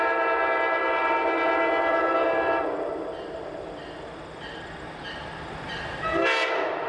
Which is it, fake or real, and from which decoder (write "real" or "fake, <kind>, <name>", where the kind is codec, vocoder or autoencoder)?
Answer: real